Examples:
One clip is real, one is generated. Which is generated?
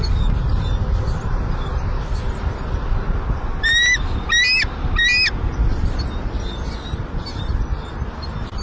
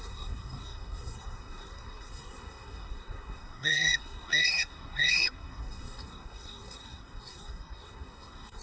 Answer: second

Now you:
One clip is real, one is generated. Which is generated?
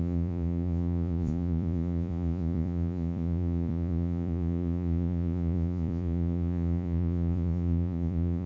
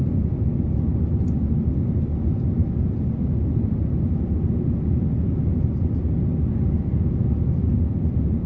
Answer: first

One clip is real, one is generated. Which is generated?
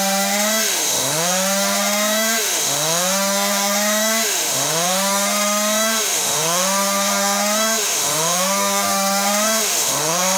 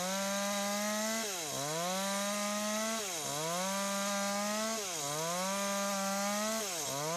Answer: first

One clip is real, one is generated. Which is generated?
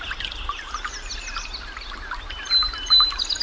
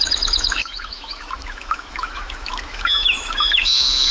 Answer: second